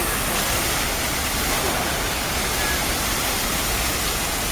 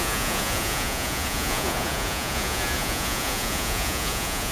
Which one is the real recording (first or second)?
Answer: first